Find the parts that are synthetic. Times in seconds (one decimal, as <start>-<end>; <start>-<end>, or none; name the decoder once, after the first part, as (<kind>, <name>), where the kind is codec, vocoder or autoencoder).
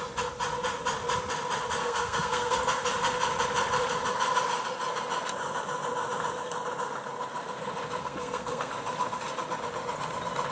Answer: 1.8-2.6 (codec, SNAC); 8.0-8.7